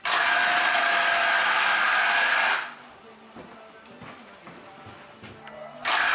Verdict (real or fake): real